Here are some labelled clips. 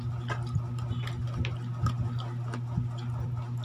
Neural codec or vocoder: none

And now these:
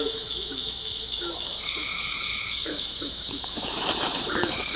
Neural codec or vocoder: autoencoder, DAC-VAE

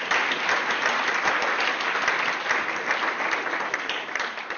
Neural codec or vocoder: none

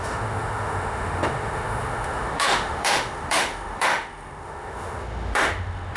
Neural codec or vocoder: autoencoder, DAC-VAE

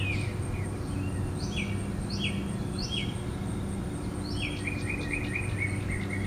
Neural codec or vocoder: none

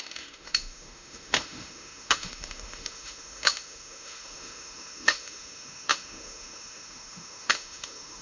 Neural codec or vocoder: autoencoder, DAC-VAE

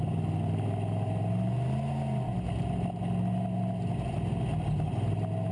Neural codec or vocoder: none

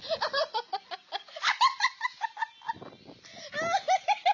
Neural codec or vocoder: none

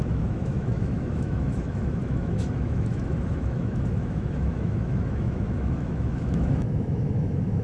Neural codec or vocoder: autoencoder, DAC-VAE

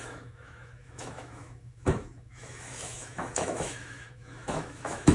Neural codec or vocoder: autoencoder, DAC-VAE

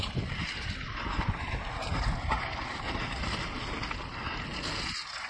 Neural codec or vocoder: none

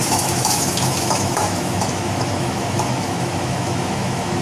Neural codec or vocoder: autoencoder, DAC-VAE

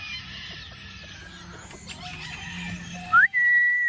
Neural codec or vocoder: none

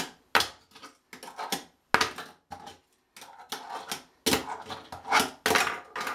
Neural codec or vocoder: none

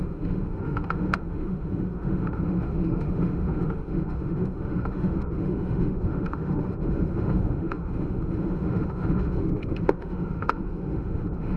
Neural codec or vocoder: autoencoder, DAC-VAE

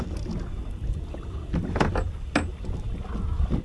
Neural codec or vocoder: none